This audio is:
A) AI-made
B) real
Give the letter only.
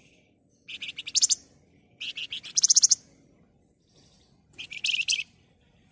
B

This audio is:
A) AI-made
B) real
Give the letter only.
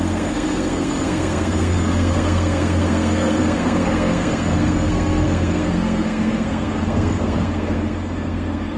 A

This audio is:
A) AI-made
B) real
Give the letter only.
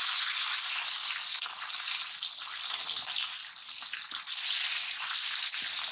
B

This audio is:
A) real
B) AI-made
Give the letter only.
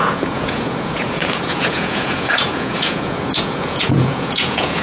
B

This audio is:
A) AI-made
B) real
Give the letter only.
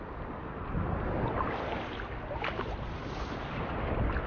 B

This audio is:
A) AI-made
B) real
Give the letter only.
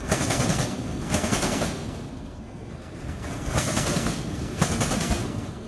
A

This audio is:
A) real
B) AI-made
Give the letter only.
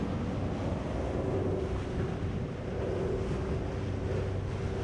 A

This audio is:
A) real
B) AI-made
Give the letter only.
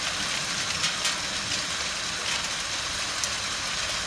A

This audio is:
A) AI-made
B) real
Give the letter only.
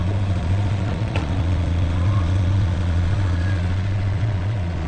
A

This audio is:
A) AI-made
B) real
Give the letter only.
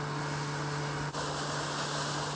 B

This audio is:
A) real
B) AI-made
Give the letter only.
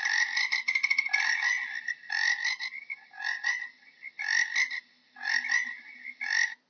A